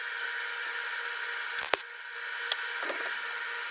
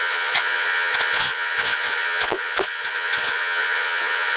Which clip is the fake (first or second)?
second